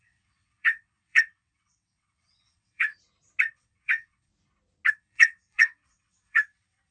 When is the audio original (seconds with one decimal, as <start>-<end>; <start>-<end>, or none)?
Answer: 2.9-3.5; 4.3-4.9